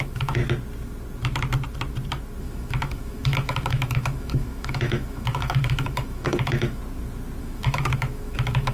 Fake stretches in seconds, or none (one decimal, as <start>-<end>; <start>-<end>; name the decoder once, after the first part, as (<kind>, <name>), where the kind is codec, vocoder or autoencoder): 0.0-0.4 (autoencoder, DAC-VAE); 2.4-6.8; 7.4-8.7